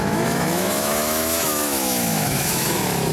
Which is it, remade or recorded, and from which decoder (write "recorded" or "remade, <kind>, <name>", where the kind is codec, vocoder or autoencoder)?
remade, autoencoder, DAC-VAE